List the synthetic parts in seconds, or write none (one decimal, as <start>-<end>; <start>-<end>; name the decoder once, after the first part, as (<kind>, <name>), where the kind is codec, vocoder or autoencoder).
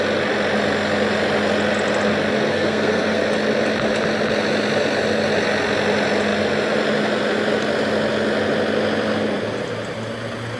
2.5-3.2 (codec, SNAC)